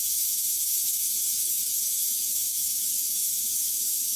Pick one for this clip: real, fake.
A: fake